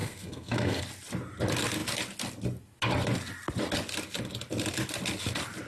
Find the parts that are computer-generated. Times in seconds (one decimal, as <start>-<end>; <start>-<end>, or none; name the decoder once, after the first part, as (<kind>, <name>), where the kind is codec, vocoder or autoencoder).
0.0-0.8 (codec, SNAC)